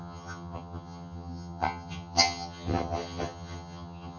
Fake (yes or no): yes